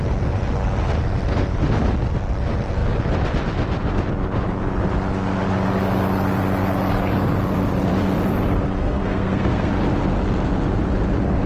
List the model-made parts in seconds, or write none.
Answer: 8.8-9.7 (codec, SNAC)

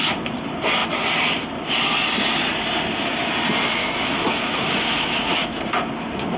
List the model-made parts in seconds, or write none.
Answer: 3.8-5.6 (autoencoder, DAC-VAE)

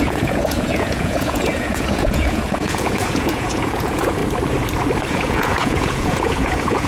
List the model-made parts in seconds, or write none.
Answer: 0.0-4.2 (vocoder, Vocos); 5.1-6.9

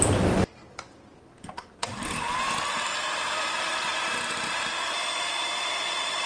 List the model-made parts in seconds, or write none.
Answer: 0.0-6.3 (vocoder, BigVGAN v2)

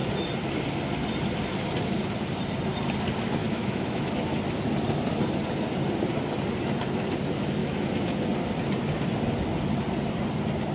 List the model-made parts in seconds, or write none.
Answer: 3.4-4.1 (autoencoder, DAC-VAE); 7.6-8.2

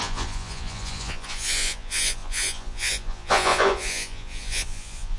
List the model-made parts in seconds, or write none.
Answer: 0.0-5.2 (vocoder, Vocos)

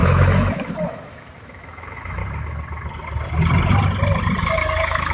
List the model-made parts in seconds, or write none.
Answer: 0.0-2.2 (autoencoder, DAC-VAE); 4.4-5.1

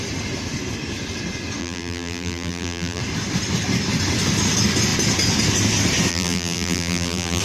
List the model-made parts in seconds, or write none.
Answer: 1.6-3.0 (vocoder, BigVGAN v2); 6.1-7.4